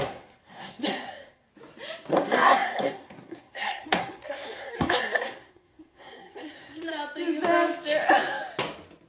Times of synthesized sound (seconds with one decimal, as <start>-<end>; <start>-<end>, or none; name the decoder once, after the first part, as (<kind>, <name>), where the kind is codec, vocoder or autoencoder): 0.0-1.5 (codec, SNAC); 2.1-6.9